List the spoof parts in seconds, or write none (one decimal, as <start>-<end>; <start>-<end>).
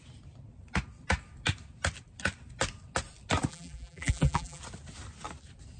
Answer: 3.5-4.6